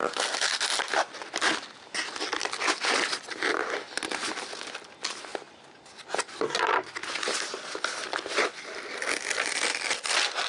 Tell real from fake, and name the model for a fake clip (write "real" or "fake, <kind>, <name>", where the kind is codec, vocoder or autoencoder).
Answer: real